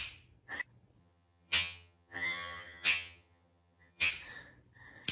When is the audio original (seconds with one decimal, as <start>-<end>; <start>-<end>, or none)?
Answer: 0.0-1.0; 4.1-5.1